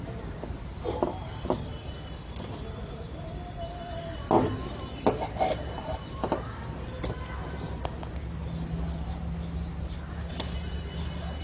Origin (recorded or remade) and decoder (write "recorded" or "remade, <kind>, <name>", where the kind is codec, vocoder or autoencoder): recorded